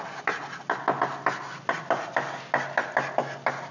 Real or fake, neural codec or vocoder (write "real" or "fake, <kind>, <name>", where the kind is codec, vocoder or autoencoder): real